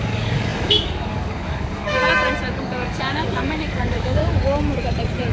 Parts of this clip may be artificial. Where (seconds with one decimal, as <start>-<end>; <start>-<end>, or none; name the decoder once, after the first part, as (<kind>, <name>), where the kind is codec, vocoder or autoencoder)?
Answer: 0.0-2.0 (codec, DAC); 2.5-4.2